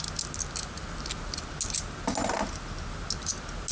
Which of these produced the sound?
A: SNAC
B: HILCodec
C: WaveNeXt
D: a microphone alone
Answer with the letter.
D